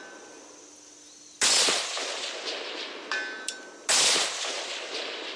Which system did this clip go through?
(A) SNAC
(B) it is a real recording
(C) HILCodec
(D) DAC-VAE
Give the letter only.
B